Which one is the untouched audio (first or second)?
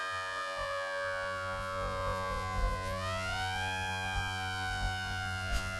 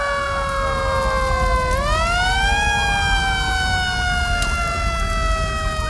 second